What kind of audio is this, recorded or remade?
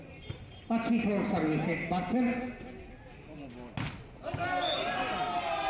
recorded